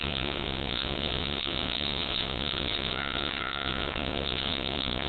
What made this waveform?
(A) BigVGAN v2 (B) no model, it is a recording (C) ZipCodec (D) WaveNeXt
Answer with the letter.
D